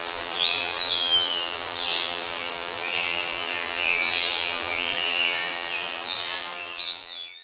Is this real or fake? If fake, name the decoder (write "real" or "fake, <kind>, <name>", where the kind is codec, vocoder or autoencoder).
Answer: fake, vocoder, BigVGAN v2